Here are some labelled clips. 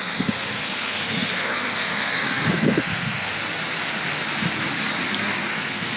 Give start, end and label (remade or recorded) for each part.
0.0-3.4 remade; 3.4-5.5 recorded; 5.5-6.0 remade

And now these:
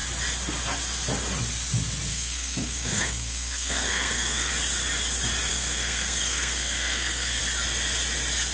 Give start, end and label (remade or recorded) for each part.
0.0-2.1 recorded; 2.1-4.5 remade; 4.5-5.5 recorded; 5.5-7.4 remade; 7.4-8.5 recorded

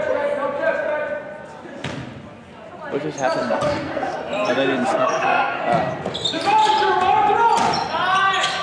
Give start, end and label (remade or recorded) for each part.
0.0-3.4 recorded; 3.4-4.2 remade; 4.2-4.9 recorded; 4.9-5.6 remade; 5.6-8.6 recorded